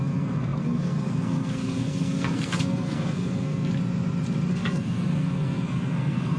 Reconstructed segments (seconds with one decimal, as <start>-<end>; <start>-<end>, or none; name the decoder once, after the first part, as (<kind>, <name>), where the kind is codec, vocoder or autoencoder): 0.0-3.7 (codec, SNAC); 4.5-6.4